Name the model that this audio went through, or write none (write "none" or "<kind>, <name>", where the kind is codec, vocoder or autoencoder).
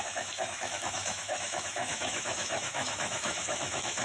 autoencoder, DAC-VAE